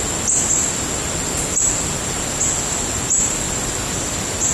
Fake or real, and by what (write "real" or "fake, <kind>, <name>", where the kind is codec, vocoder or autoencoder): real